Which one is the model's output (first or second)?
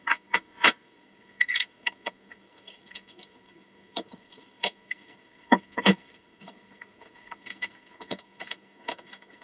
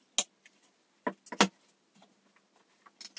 first